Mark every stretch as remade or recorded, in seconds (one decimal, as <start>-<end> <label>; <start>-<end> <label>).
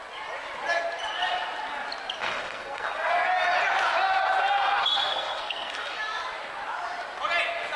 0.0-2.2 recorded; 2.2-3.1 remade; 3.1-4.8 recorded; 4.8-6.0 remade; 6.0-7.8 recorded